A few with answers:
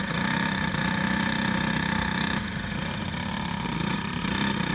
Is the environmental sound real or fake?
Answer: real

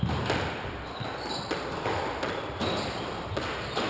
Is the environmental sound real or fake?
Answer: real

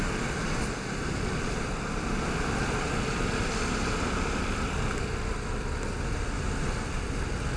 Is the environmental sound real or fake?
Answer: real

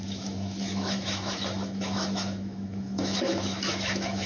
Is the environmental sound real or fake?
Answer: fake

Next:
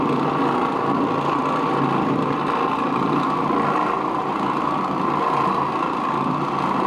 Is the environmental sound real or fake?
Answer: real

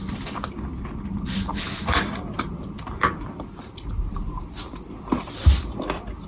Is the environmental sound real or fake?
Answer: real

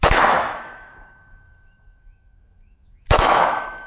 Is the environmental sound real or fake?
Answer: fake